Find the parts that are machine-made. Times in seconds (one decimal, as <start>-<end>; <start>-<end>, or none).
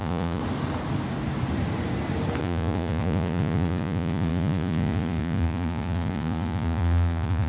0.0-0.4; 2.4-7.5